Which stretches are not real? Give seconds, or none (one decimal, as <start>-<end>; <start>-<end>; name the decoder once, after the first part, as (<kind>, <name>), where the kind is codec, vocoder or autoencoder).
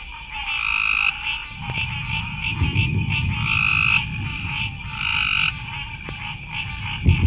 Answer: none